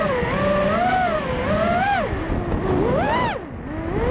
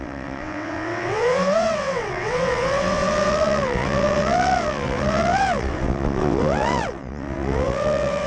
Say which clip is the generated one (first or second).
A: second